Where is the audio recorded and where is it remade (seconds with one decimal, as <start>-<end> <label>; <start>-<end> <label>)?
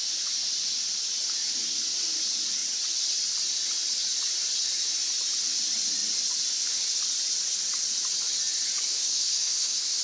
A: 0.0-8.9 recorded; 8.9-10.0 remade